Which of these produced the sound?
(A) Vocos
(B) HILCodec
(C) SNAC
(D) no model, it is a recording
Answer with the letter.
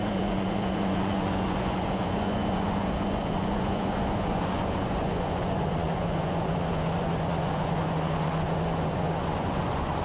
A